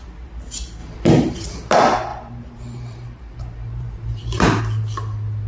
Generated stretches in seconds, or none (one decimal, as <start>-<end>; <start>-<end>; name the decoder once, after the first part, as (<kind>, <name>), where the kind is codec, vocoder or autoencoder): 0.8-1.7 (vocoder, BigVGAN v2); 2.1-4.6